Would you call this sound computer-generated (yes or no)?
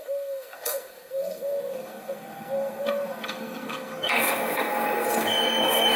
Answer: yes